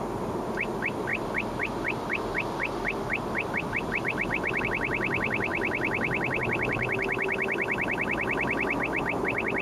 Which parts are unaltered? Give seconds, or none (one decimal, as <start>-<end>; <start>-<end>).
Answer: 0.0-9.6